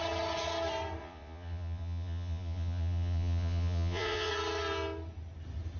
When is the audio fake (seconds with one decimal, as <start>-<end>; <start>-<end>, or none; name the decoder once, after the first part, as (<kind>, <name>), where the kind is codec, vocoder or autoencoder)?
1.0-4.3 (vocoder, Vocos)